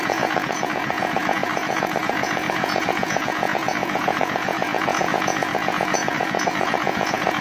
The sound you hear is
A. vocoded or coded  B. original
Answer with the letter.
A